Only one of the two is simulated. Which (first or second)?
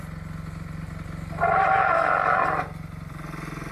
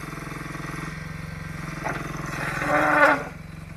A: first